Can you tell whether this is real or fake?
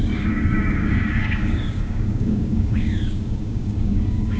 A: fake